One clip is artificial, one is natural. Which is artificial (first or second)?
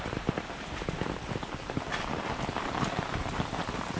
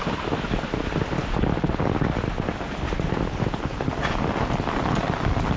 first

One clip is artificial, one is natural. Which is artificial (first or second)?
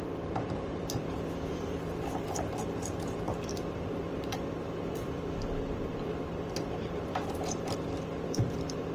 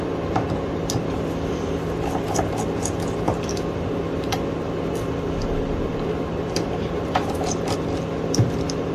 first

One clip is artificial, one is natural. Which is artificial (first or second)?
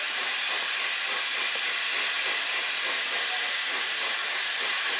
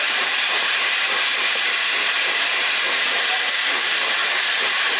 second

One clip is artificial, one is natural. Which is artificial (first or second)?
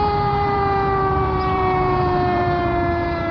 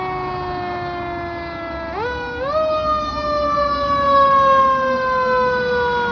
first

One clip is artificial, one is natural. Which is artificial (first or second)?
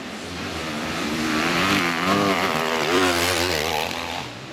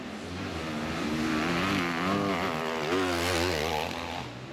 first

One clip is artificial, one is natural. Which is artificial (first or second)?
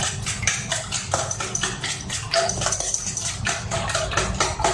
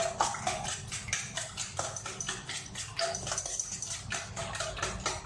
first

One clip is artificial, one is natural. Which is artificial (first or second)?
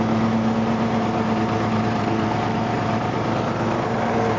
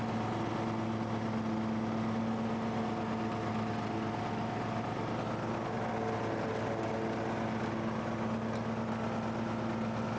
first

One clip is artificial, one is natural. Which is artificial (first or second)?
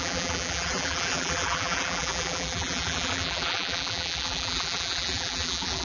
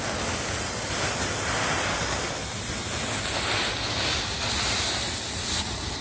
first